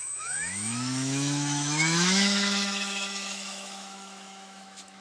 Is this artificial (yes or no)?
yes